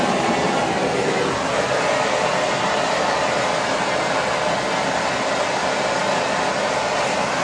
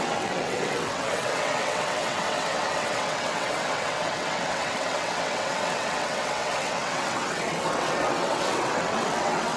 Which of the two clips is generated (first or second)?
second